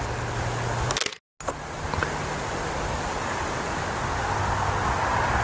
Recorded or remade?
recorded